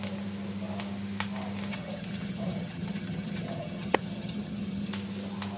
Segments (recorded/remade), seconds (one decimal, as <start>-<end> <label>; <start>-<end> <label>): 0.0-1.7 recorded; 1.7-4.9 remade; 4.9-5.6 recorded